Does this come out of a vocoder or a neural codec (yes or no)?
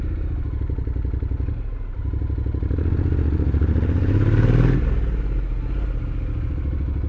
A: no